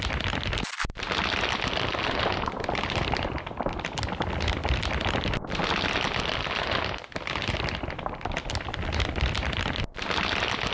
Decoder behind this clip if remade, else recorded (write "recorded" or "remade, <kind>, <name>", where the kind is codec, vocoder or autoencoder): recorded